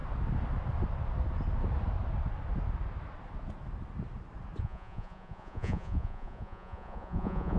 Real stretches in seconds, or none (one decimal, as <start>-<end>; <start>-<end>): 0.0-4.6

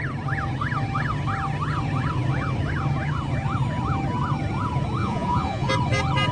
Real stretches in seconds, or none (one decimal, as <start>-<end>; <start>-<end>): 0.0-5.0; 5.7-6.3

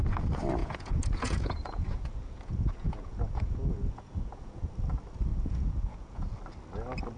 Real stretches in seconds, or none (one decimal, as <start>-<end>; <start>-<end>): 0.0-0.6; 4.7-5.3; 6.3-7.2

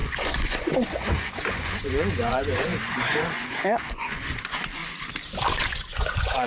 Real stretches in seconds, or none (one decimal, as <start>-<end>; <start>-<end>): 4.8-5.5

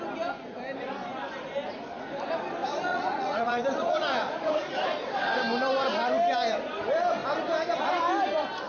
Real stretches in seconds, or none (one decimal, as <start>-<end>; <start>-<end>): 0.0-2.6; 5.4-8.7

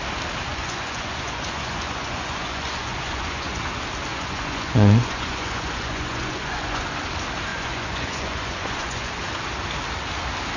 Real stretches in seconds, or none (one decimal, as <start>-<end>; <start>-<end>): 0.0-0.5; 3.6-4.1; 6.8-7.5; 9.1-10.6

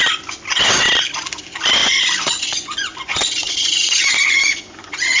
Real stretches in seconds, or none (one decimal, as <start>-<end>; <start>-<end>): 0.0-1.8

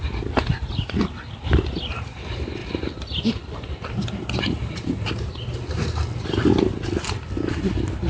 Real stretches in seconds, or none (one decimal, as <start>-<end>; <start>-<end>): 0.0-8.1